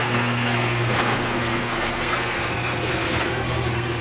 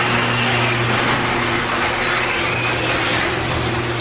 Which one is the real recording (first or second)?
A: second